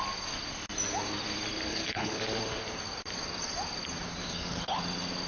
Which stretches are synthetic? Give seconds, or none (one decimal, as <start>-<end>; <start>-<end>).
1.7-2.2; 4.2-4.8